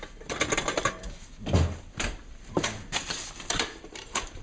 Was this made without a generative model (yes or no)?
no